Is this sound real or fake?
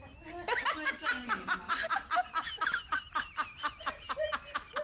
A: real